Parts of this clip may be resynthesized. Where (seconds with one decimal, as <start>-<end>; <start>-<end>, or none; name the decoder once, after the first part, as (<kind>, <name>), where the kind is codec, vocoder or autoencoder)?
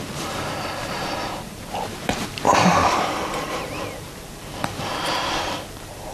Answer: 0.0-6.1 (vocoder, BigVGAN v2)